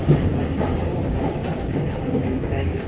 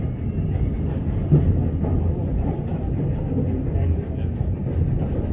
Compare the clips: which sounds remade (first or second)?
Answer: first